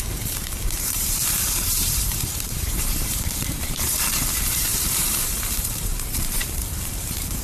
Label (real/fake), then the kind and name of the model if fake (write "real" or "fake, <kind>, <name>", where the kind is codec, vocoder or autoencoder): fake, vocoder, BigVGAN v2